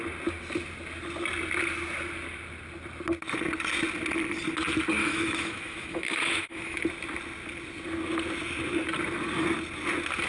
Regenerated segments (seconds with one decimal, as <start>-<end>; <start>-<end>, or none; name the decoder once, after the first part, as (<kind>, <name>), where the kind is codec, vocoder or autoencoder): 5.0-6.8 (autoencoder, DAC-VAE)

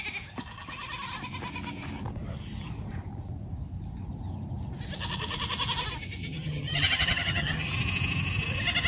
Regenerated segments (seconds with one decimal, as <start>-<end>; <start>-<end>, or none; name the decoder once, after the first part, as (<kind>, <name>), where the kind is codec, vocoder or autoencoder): 6.2-7.7 (vocoder, HiFi-GAN)